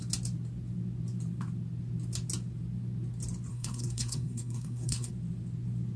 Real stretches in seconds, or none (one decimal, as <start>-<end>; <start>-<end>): 0.0-3.5; 5.1-6.0